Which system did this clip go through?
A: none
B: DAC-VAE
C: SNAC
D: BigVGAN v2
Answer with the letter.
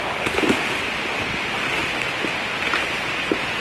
A